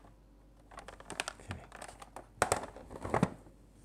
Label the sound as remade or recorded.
recorded